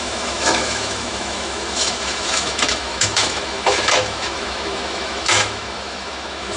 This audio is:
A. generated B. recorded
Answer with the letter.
A